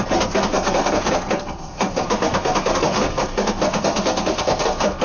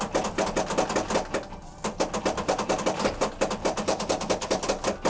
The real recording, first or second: second